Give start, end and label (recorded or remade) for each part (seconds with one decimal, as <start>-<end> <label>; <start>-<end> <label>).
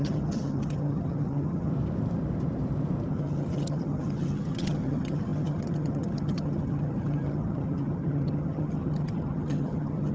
0.0-1.7 remade; 1.7-3.1 recorded; 3.1-10.1 remade